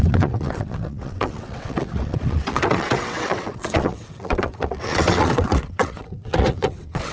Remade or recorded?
remade